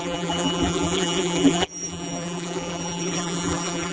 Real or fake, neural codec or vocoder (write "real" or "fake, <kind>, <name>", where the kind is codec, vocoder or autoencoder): fake, vocoder, BigVGAN v2